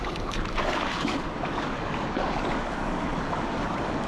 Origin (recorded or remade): remade